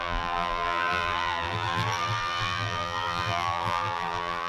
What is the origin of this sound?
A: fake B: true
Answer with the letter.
A